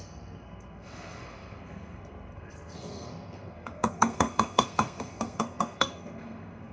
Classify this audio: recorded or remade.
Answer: remade